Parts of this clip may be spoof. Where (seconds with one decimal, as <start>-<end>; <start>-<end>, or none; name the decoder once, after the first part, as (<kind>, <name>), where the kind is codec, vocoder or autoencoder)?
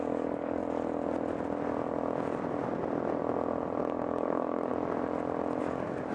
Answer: 0.0-0.6 (codec, DAC); 3.8-4.7; 5.6-6.1